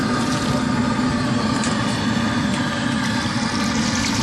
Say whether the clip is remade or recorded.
recorded